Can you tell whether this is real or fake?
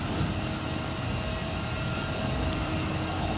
fake